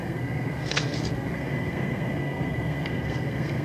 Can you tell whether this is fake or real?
fake